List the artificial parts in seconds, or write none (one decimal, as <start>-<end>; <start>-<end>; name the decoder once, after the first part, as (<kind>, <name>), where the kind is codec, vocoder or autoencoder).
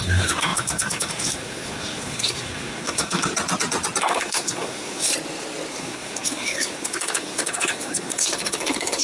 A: 0.0-3.3 (codec, SNAC); 4.0-5.1; 5.7-9.0